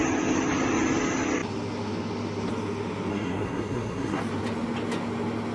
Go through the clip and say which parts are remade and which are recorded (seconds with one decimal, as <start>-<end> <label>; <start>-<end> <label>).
0.0-3.1 recorded; 3.1-4.2 remade; 4.2-5.5 recorded